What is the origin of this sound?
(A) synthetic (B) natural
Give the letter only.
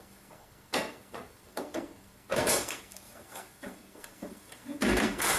A